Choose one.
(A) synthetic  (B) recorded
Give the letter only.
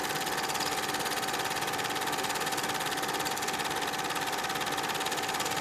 B